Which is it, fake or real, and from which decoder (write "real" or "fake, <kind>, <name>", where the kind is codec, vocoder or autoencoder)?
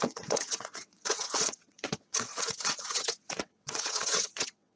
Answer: fake, vocoder, WaveNeXt